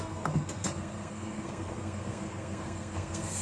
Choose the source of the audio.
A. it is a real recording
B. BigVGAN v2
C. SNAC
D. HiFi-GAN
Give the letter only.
C